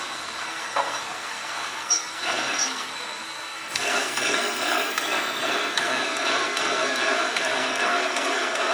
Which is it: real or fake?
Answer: fake